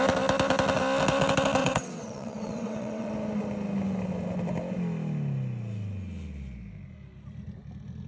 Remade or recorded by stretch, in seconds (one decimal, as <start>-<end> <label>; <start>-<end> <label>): 0.0-1.6 recorded; 1.6-3.1 remade; 3.1-8.1 recorded